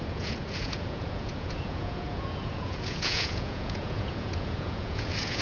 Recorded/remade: remade